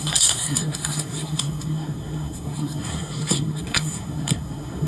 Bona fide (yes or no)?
no